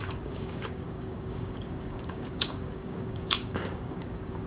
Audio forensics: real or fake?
fake